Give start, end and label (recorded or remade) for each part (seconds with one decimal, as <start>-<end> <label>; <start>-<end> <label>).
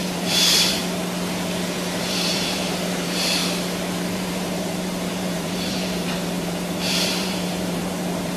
0.0-0.8 remade; 0.8-2.0 recorded; 2.0-3.4 remade; 3.4-3.9 recorded; 3.9-8.4 remade